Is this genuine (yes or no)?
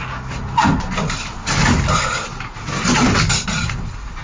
yes